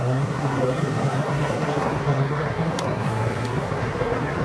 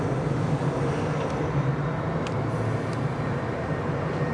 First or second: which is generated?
first